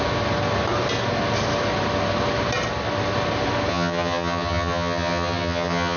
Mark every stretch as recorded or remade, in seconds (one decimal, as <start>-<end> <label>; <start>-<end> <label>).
0.0-3.7 recorded; 3.7-6.0 remade

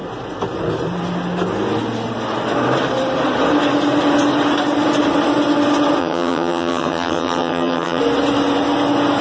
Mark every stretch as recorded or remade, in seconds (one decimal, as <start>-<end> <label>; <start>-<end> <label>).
0.0-6.0 recorded; 6.0-8.0 remade; 8.0-9.2 recorded

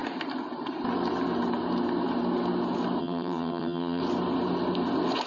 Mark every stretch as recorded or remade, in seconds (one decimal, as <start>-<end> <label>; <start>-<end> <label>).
0.0-3.0 recorded; 3.0-4.0 remade; 4.0-5.3 recorded

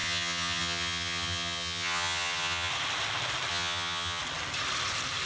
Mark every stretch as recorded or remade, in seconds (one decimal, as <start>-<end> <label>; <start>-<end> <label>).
0.0-2.7 remade; 2.7-3.5 recorded; 3.5-4.2 remade; 4.2-5.3 recorded